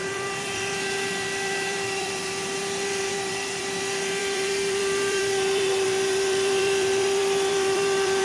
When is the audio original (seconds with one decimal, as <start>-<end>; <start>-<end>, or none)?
none